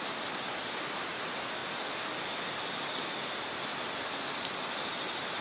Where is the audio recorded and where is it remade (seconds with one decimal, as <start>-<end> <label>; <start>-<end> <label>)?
0.0-3.7 recorded; 3.7-5.4 remade